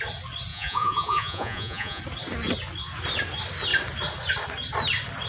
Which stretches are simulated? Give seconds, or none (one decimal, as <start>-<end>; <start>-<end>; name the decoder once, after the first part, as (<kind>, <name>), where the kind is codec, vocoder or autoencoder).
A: 0.5-2.0 (vocoder, Vocos)